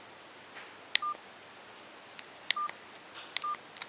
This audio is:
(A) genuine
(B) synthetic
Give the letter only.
A